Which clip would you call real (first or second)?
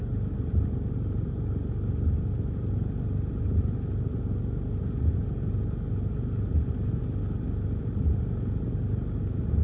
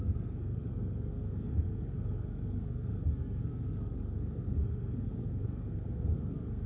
first